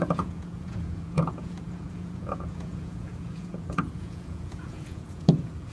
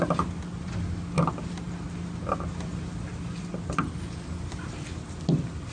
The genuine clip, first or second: second